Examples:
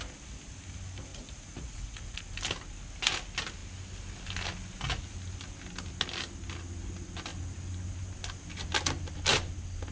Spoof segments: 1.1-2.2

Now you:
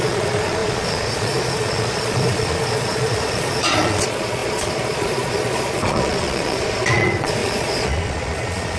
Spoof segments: 0.0-8.8

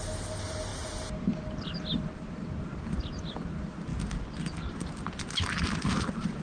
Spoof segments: none